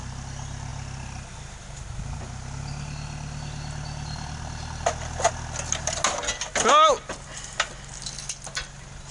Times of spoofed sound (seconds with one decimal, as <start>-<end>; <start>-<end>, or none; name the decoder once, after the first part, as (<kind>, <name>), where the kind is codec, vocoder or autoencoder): none